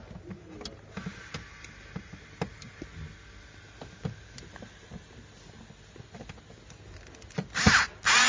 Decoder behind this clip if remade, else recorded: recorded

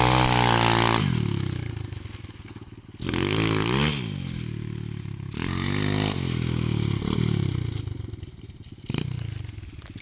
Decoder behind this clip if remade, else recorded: recorded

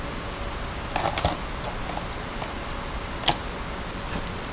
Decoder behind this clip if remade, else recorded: recorded